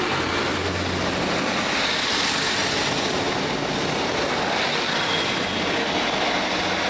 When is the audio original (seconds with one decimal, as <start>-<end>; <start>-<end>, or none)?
0.0-6.9